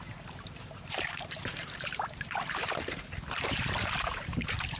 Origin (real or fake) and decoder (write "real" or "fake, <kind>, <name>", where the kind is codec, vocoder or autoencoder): fake, vocoder, BigVGAN v2